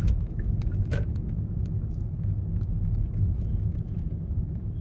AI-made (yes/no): yes